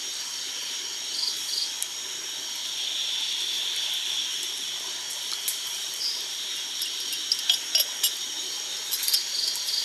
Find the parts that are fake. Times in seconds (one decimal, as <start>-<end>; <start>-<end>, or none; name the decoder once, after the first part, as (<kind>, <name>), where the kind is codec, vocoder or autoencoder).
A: none